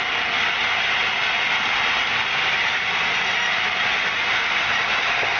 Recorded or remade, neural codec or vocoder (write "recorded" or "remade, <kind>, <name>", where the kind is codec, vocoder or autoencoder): recorded